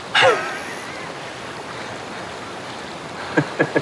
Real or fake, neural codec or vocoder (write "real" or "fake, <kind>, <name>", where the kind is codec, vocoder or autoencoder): real